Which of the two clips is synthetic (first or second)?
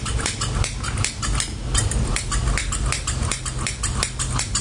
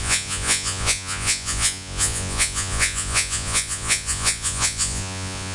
second